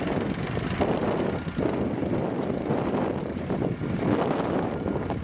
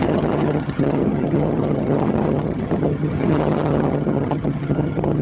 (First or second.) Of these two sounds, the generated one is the second